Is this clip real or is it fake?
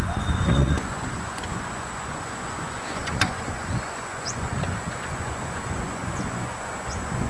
fake